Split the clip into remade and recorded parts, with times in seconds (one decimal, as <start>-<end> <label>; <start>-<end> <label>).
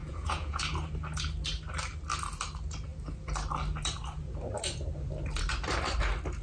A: 0.0-0.6 remade; 0.6-6.4 recorded